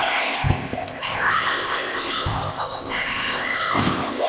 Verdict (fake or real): fake